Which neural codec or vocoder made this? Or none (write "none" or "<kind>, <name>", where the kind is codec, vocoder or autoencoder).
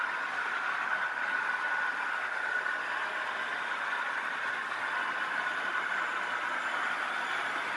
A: none